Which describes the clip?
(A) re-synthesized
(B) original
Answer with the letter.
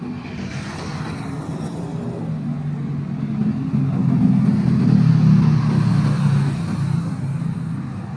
B